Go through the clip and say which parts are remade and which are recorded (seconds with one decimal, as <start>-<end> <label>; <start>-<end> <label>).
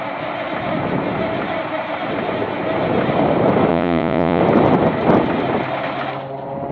0.0-3.7 recorded; 3.7-4.4 remade; 4.4-6.7 recorded